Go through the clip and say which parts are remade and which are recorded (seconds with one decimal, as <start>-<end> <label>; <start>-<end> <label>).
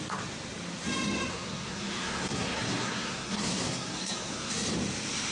0.0-1.3 recorded; 1.3-4.5 remade; 4.5-5.3 recorded